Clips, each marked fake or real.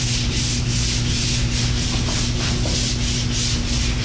real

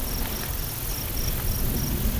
real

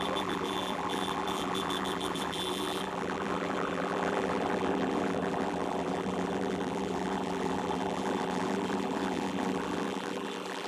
fake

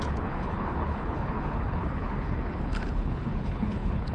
fake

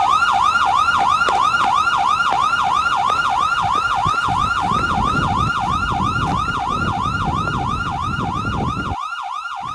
real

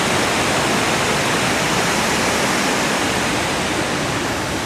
real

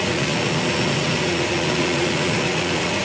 fake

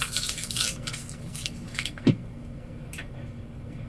fake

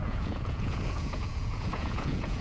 fake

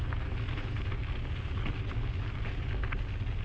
real